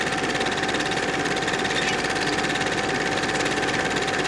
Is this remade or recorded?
recorded